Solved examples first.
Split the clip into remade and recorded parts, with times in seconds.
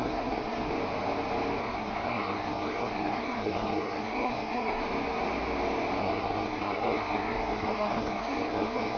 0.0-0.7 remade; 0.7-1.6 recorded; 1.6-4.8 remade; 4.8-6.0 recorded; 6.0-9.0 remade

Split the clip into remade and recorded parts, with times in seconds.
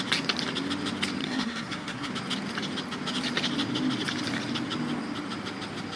0.0-1.2 recorded; 1.2-2.1 remade; 2.1-6.0 recorded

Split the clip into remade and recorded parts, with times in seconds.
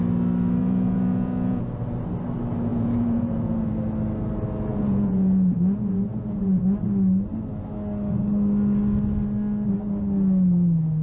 0.0-0.6 recorded; 0.6-1.6 remade; 1.6-2.7 recorded; 2.7-3.7 remade; 3.7-4.7 recorded; 4.7-6.5 remade; 6.5-11.0 recorded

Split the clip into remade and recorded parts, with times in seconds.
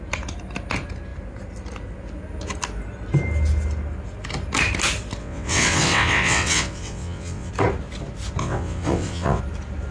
0.0-5.2 recorded; 5.2-7.5 remade; 7.5-8.4 recorded; 8.4-9.4 remade; 9.4-9.9 recorded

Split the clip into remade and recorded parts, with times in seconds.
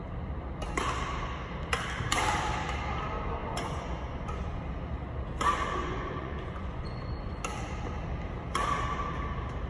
0.0-3.4 recorded; 3.4-4.6 remade; 4.6-5.8 recorded; 5.8-7.4 remade; 7.4-9.7 recorded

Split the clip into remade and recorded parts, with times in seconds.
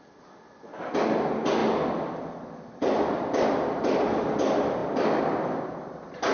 0.0-6.3 recorded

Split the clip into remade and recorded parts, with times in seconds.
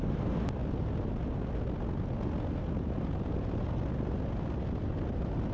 0.0-5.5 recorded